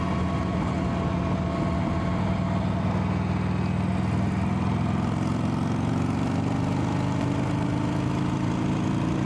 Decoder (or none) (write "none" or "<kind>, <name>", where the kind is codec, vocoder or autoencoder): none